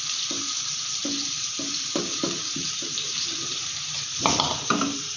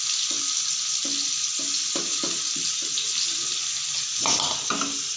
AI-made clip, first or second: first